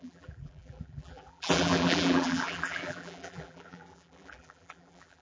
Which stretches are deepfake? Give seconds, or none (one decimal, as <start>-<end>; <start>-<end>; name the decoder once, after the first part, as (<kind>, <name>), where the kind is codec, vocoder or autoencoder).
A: 0.0-5.2 (vocoder, BigVGAN v2)